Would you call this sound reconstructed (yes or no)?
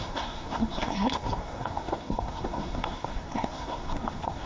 yes